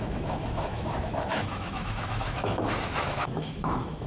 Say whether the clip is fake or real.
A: fake